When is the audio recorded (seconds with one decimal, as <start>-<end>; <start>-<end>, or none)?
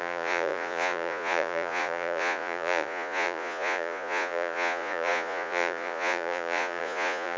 none